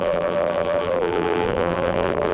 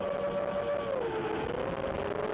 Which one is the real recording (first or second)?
second